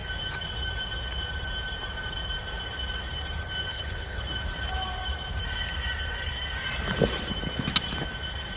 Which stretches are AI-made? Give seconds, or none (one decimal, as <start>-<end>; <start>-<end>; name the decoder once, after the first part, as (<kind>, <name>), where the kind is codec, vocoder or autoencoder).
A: 3.7-4.2 (codec, HILCodec)